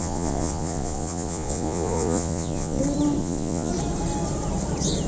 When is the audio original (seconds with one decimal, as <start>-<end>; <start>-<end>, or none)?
2.8-3.2; 3.7-5.1

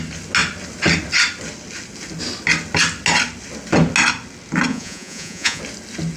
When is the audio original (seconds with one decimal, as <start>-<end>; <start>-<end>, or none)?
0.0-4.7; 5.6-6.2